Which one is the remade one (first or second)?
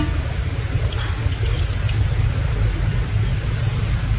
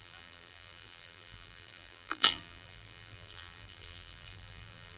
second